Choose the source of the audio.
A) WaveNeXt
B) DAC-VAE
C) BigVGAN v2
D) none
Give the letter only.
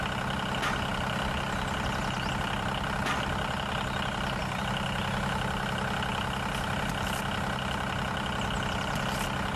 D